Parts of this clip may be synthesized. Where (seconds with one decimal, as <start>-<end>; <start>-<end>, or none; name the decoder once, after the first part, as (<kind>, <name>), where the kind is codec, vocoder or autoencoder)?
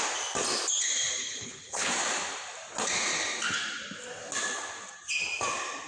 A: 1.2-1.9 (codec, HILCodec)